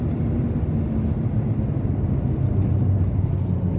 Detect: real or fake real